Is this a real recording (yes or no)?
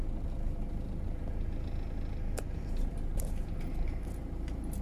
yes